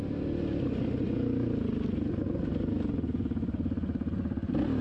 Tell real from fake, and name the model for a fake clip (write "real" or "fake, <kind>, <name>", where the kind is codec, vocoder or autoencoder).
real